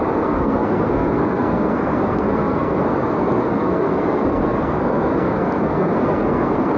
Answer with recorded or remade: remade